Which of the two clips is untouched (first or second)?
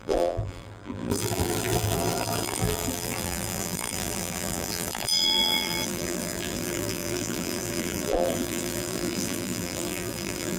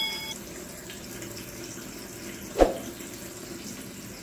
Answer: second